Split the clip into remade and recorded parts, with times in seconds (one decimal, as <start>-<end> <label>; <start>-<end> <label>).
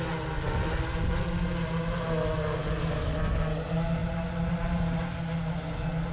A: 0.0-2.6 recorded; 2.6-3.2 remade; 3.2-6.1 recorded